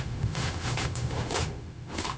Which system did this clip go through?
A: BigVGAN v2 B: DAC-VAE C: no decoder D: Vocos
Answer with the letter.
B